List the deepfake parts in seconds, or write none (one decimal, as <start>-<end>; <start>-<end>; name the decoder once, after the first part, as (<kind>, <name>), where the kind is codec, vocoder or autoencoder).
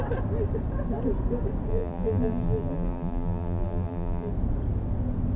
1.7-4.3 (vocoder, BigVGAN v2)